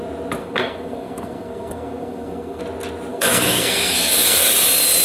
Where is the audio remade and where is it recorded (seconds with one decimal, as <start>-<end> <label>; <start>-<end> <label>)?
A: 0.0-0.4 recorded; 0.4-2.6 remade; 2.6-3.1 recorded; 3.1-4.5 remade; 4.5-5.0 recorded